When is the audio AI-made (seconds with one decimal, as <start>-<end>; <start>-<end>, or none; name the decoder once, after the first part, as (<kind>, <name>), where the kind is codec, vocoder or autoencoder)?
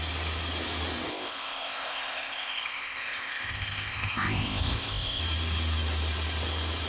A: 1.1-5.2 (codec, ZipCodec)